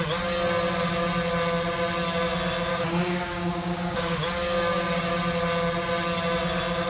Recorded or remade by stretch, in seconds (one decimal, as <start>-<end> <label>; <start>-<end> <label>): 0.0-2.7 recorded; 2.7-5.1 remade; 5.1-6.9 recorded